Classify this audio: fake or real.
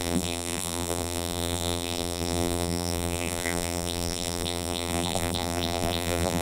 fake